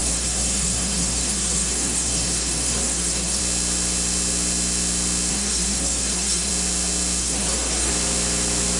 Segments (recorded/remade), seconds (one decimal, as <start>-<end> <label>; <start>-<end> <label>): 0.0-3.4 remade; 3.4-5.3 recorded; 5.3-6.5 remade; 6.5-7.2 recorded; 7.2-7.9 remade; 7.9-8.8 recorded